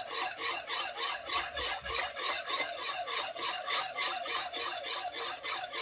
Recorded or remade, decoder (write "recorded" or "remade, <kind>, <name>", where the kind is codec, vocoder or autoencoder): recorded